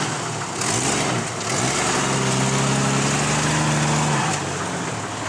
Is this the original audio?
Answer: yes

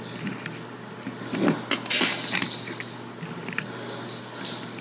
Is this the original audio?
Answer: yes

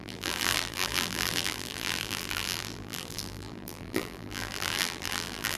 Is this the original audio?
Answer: no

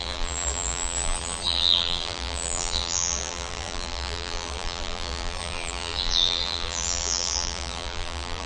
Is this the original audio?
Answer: no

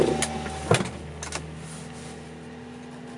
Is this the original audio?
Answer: yes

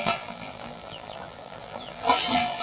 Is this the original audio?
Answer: no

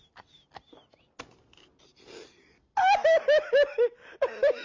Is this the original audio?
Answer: yes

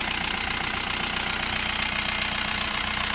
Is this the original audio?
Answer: yes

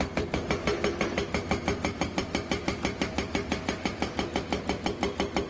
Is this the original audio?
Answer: no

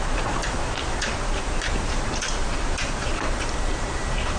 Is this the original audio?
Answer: no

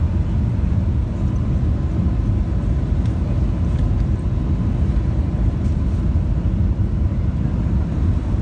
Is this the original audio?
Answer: yes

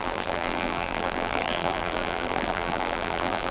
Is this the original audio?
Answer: no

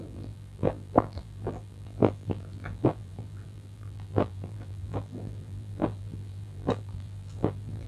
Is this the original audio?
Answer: no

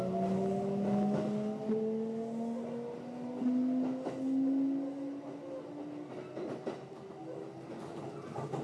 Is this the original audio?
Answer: yes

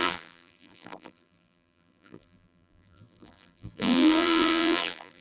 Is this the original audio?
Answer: no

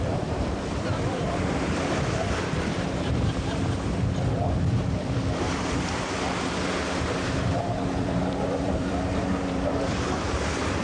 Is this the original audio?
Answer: no